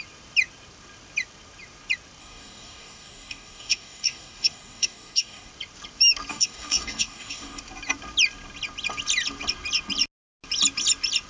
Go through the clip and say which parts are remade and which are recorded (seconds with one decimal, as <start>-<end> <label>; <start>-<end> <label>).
0.0-2.2 recorded; 2.2-5.5 remade; 5.5-6.3 recorded; 6.3-7.6 remade; 7.6-11.3 recorded

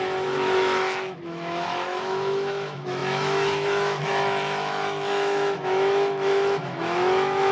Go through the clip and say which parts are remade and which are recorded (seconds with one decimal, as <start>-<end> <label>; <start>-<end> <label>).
0.0-7.5 remade

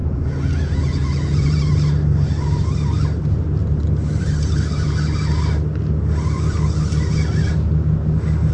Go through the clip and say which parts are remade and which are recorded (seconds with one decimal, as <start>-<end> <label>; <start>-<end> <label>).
0.0-1.6 remade; 1.6-8.5 recorded

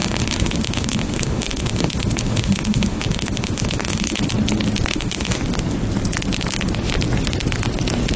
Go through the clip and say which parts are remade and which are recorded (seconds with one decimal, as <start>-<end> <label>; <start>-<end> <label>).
0.0-4.2 remade; 4.2-4.9 recorded; 4.9-5.4 remade; 5.4-8.2 recorded

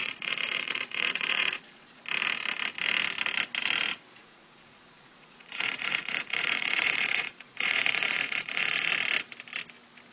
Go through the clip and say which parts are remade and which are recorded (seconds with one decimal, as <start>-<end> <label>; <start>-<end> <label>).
0.0-2.0 remade; 2.0-4.2 recorded; 4.2-8.9 remade; 8.9-10.1 recorded

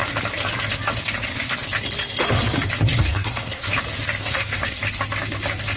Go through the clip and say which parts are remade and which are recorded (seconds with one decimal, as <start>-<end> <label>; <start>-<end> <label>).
0.0-3.0 recorded; 3.0-3.7 remade; 3.7-4.2 recorded; 4.2-4.8 remade; 4.8-5.8 recorded